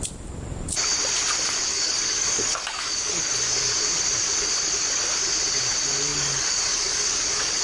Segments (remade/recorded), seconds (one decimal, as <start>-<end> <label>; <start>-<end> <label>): 0.0-1.7 recorded; 1.7-3.2 remade; 3.2-6.1 recorded; 6.1-7.6 remade